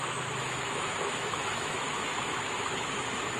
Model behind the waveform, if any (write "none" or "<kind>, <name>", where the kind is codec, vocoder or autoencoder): autoencoder, DAC-VAE